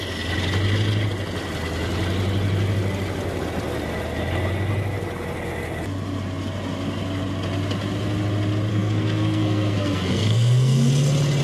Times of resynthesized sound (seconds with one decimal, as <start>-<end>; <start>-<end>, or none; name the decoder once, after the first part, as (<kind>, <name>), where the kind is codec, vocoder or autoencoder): 8.7-10.9 (codec, SNAC)